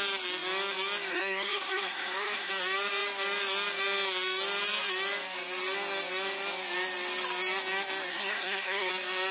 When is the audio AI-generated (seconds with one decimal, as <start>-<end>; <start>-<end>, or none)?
1.1-2.5; 8.1-8.9

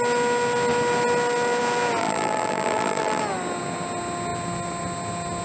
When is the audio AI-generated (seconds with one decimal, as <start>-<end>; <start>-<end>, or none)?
2.0-3.2

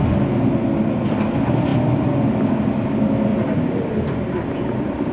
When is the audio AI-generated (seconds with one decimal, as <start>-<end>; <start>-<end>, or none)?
3.3-5.1